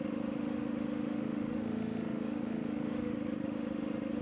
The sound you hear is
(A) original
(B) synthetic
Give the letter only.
B